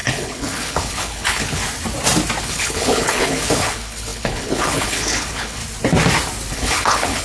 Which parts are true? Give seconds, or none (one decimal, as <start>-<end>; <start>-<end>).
1.6-2.4; 5.6-6.5